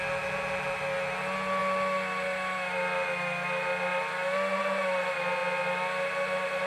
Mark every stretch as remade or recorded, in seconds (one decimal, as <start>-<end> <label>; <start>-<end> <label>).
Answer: 0.0-6.7 recorded